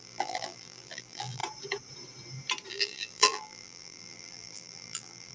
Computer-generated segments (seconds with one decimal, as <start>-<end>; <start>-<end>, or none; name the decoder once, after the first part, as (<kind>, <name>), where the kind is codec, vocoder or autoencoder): 0.0-1.4 (vocoder, BigVGAN v2); 2.7-5.3